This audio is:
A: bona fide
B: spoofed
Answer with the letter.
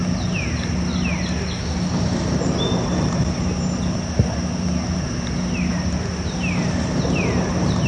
A